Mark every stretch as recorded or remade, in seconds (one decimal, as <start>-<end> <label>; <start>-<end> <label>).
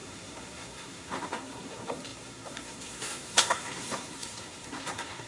0.0-5.3 remade